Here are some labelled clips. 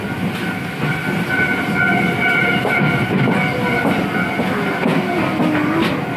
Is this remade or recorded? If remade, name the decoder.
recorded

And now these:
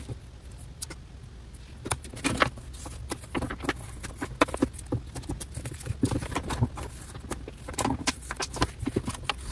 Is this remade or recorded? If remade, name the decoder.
recorded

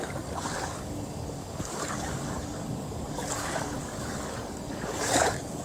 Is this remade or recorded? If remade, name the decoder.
remade, codec, DAC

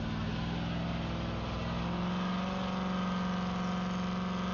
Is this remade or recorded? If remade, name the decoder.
recorded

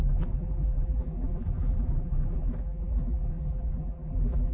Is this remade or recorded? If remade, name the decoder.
remade, vocoder, BigVGAN v2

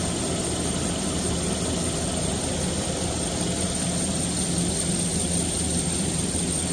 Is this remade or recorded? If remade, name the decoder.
recorded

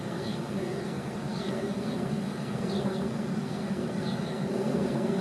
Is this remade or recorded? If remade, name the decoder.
remade, codec, SNAC